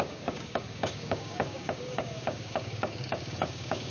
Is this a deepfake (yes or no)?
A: yes